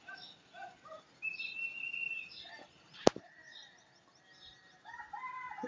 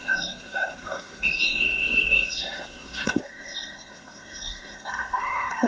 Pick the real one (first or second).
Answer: first